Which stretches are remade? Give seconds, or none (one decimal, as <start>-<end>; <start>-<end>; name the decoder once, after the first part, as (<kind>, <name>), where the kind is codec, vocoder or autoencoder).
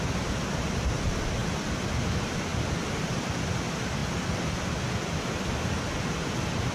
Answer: none